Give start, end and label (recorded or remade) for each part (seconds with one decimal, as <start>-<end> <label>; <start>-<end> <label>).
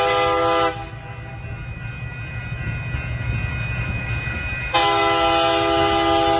0.0-6.4 recorded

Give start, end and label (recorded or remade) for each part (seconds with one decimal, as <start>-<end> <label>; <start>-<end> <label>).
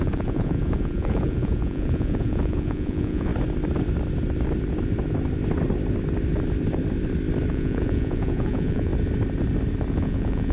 0.0-3.3 remade; 3.3-7.5 recorded; 7.5-8.9 remade; 8.9-9.9 recorded; 9.9-10.5 remade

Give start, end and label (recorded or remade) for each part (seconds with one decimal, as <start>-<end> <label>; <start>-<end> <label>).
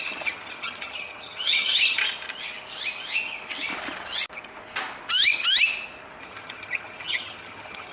0.0-2.0 remade; 2.0-6.2 recorded; 6.2-7.9 remade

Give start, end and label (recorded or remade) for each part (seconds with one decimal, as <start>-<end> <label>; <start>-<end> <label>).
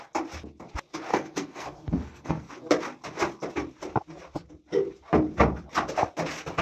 0.0-1.1 recorded; 1.1-2.5 remade; 2.5-6.6 recorded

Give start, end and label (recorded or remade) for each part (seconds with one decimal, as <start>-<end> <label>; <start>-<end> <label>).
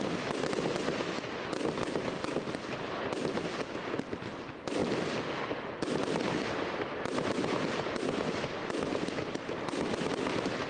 0.0-10.7 recorded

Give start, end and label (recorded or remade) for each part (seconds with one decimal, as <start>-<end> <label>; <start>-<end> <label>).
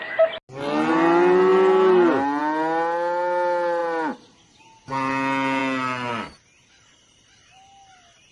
0.0-8.3 recorded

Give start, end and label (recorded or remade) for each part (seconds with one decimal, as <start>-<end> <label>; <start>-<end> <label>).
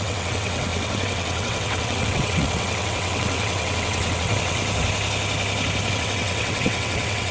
0.0-4.6 remade; 4.6-5.9 recorded; 5.9-7.3 remade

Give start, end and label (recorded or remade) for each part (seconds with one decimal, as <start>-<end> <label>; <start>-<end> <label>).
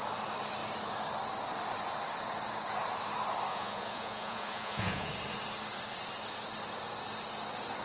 0.0-3.5 recorded; 3.5-5.1 remade; 5.1-7.8 recorded